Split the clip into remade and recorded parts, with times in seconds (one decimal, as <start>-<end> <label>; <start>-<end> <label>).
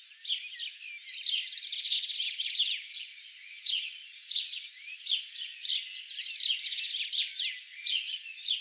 0.0-2.2 recorded; 2.2-5.7 remade; 5.7-7.7 recorded; 7.7-8.6 remade